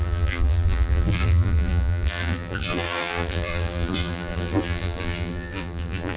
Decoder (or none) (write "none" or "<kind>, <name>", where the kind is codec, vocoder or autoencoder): vocoder, BigVGAN v2